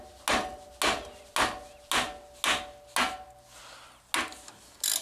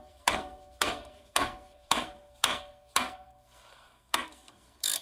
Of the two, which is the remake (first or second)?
second